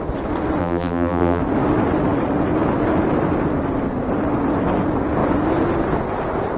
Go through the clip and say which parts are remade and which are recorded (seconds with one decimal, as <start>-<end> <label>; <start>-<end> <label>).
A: 0.0-0.6 recorded; 0.6-1.4 remade; 1.4-6.6 recorded